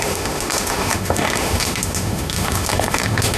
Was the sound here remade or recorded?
remade